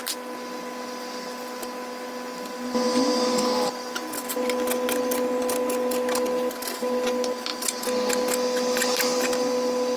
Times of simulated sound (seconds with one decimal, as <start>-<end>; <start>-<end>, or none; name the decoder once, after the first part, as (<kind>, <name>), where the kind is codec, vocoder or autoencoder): none